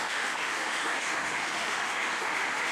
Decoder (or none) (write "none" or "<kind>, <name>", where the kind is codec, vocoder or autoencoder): autoencoder, DAC-VAE